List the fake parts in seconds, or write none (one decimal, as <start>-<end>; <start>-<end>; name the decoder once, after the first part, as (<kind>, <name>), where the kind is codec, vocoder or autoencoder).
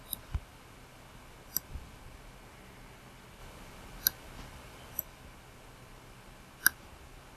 none